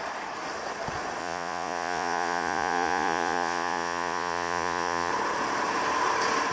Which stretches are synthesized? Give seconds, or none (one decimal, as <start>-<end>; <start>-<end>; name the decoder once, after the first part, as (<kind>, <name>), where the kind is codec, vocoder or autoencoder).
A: 1.2-5.1 (vocoder, Vocos)